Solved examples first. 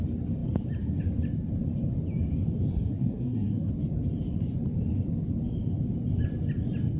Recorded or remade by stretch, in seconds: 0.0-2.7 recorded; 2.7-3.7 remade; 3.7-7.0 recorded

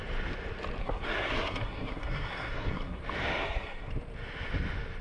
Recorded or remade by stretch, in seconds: 0.0-0.8 recorded; 0.8-3.0 remade; 3.0-3.4 recorded; 3.4-3.9 remade; 3.9-5.0 recorded

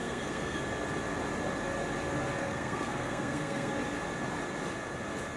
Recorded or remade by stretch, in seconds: 0.0-0.6 remade; 0.6-2.4 recorded; 2.4-3.7 remade; 3.7-5.4 recorded

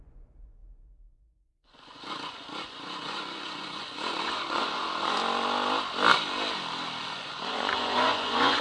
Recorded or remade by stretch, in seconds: 0.0-5.2 remade; 5.2-7.0 recorded; 7.0-8.6 remade

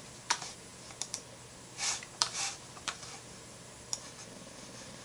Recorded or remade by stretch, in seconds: 0.0-5.0 remade

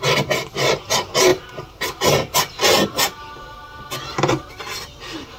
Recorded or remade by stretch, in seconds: 0.0-5.4 recorded

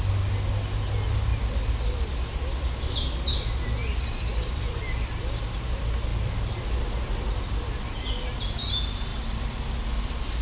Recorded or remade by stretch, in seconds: 0.0-4.3 recorded; 4.3-4.8 remade; 4.8-6.1 recorded; 6.1-7.7 remade; 7.7-9.1 recorded; 9.1-10.4 remade

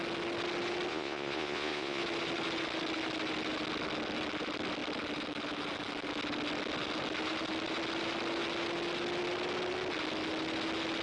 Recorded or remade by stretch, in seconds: 0.0-0.9 recorded; 0.9-2.0 remade; 2.0-11.0 recorded